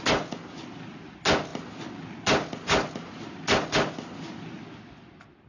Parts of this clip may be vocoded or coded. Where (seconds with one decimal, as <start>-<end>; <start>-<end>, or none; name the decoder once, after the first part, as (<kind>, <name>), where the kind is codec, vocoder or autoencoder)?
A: none